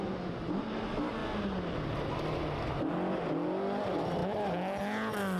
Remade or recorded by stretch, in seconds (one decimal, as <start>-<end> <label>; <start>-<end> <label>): 0.0-5.4 recorded

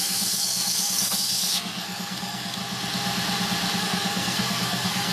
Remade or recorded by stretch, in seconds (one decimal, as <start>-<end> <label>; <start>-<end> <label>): 0.0-2.6 remade; 2.6-3.8 recorded; 3.8-5.1 remade